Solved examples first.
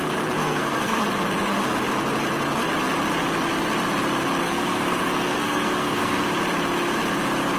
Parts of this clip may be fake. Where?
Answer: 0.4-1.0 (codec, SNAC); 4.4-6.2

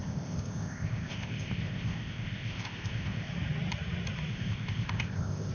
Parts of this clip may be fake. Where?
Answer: 0.0-3.3 (codec, ZipCodec); 4.3-5.5

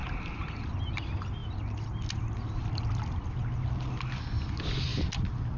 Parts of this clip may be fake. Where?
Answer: none

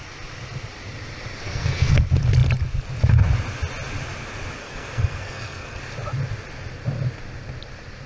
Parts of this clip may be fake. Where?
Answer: 1.4-1.9 (codec, SNAC); 4.6-5.8

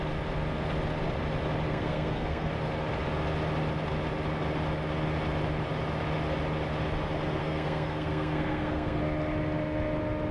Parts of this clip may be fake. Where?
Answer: 1.7-2.5 (codec, SNAC); 7.4-9.0

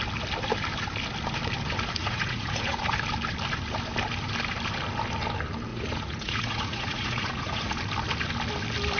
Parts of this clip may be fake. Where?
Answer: 2.0-2.8 (vocoder, Vocos); 5.7-7.7

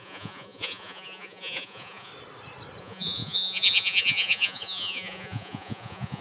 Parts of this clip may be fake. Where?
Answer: 0.0-2.1 (vocoder, Vocos); 2.8-6.2